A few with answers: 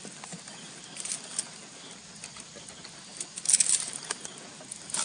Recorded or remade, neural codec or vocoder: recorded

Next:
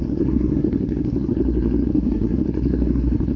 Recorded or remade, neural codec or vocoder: remade, codec, SNAC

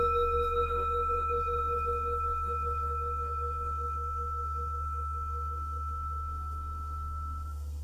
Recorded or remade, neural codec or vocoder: remade, codec, SNAC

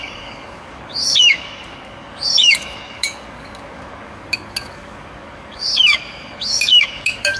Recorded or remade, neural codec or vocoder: remade, codec, DAC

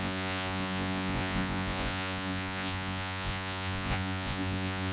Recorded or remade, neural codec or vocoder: remade, vocoder, Vocos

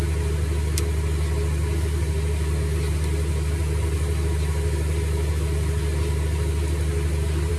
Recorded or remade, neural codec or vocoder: remade, vocoder, BigVGAN v2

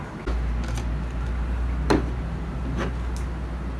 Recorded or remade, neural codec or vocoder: recorded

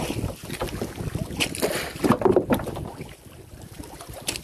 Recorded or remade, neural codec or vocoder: recorded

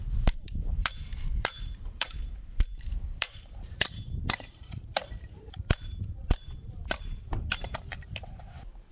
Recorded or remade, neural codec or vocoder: remade, vocoder, BigVGAN v2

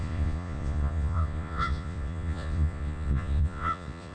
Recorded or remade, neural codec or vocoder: remade, vocoder, Vocos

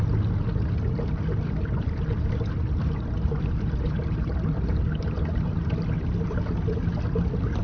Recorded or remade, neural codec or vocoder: recorded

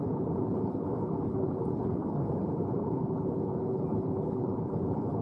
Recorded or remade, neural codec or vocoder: remade, codec, HILCodec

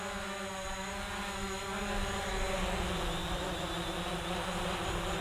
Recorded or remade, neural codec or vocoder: recorded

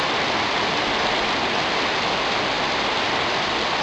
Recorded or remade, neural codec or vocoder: recorded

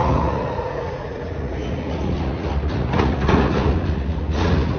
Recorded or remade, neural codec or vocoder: remade, vocoder, Vocos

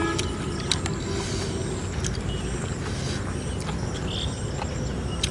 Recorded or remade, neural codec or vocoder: recorded